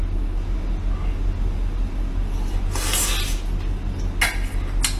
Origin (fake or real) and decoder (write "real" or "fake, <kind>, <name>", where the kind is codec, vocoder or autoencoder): real